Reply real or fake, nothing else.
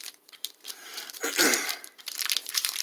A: fake